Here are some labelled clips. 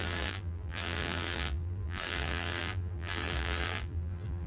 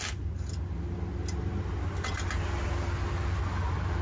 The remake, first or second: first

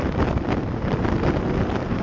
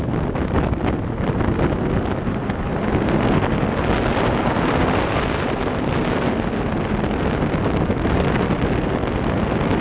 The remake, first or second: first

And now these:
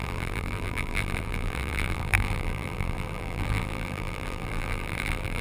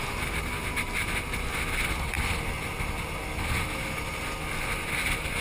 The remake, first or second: first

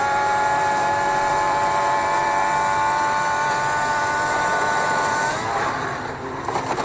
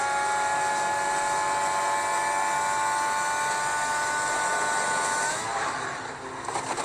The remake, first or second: first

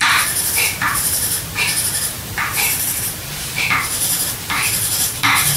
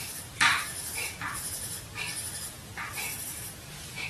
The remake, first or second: first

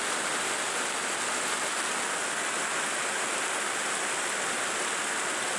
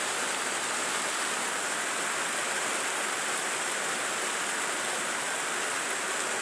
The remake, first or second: second